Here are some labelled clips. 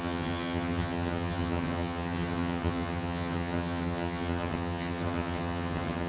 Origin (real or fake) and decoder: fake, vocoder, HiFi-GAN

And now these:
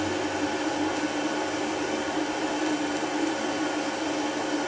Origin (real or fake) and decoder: real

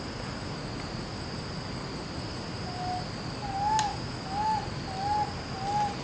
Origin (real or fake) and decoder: real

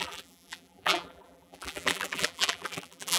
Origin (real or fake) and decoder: fake, vocoder, BigVGAN v2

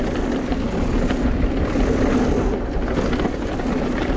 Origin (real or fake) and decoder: real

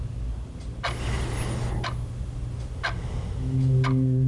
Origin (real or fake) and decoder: real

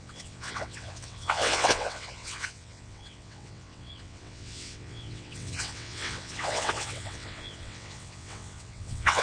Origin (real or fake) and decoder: fake, vocoder, WaveNeXt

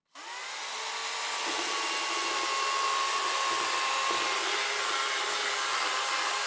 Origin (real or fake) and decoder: real